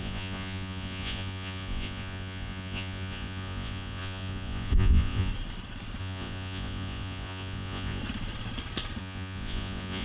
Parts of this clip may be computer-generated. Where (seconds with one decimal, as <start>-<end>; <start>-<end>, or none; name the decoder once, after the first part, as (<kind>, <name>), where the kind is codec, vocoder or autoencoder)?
0.0-5.3 (vocoder, Vocos); 6.0-8.0; 9.0-10.0

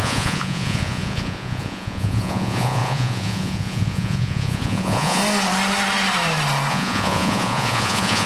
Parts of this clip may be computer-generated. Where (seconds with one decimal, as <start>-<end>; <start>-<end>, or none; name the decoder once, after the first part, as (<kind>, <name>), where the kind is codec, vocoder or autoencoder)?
0.0-5.2 (vocoder, Vocos); 6.7-8.3

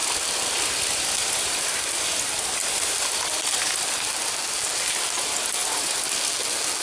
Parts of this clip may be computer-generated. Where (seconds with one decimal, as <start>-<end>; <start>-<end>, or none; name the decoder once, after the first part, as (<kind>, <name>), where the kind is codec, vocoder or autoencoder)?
0.0-4.1 (vocoder, BigVGAN v2); 5.6-6.3

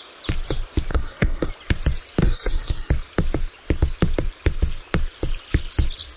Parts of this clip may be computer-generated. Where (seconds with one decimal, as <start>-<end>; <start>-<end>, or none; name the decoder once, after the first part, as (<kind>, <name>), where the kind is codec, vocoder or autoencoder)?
0.9-1.5 (codec, SNAC); 2.2-2.9